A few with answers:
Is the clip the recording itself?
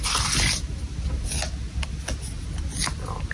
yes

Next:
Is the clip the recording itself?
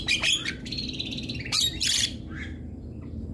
no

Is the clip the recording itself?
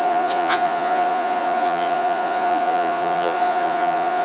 no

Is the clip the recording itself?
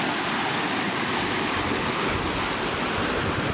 yes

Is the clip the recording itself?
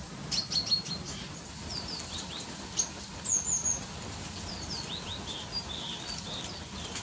yes